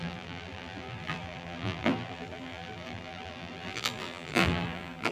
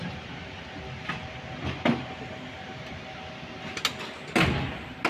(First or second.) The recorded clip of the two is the second